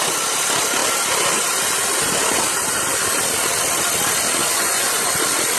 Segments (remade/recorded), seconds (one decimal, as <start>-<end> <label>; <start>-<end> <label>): 0.0-4.4 recorded; 4.4-5.1 remade; 5.1-5.6 recorded